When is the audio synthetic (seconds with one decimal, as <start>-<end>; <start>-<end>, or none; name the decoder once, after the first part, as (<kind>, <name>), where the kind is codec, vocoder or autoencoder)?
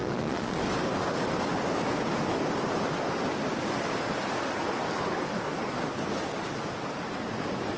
0.0-0.6 (vocoder, Vocos)